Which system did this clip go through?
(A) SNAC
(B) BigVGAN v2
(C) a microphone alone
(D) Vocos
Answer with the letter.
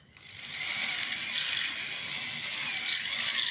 C